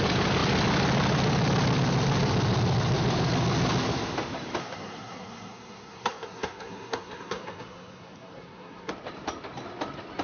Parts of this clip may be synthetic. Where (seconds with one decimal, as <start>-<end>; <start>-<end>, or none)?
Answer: 4.6-8.9